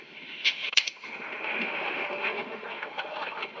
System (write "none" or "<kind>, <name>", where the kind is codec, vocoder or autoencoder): autoencoder, DAC-VAE